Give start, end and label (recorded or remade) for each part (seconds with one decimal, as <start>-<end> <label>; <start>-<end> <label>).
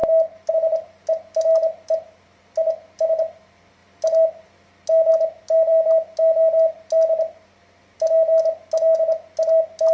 0.0-9.9 recorded